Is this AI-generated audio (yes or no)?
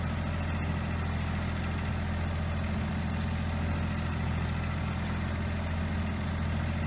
no